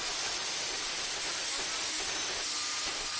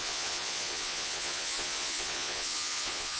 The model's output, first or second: second